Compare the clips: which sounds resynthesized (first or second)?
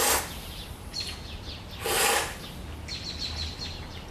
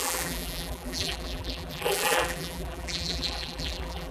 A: second